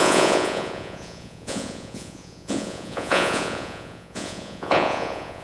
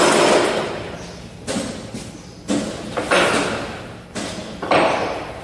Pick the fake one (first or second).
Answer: first